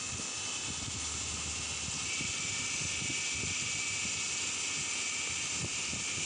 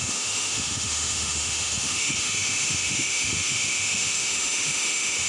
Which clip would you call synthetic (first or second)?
second